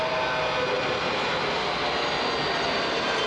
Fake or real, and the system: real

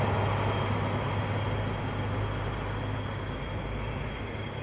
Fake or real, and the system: real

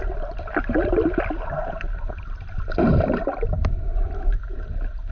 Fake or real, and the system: real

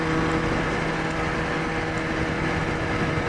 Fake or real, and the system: real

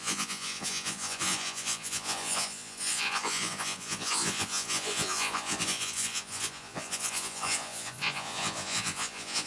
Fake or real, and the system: fake, vocoder, Vocos